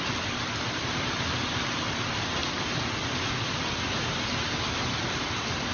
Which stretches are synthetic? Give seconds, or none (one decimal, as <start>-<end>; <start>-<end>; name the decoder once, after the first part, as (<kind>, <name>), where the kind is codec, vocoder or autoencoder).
none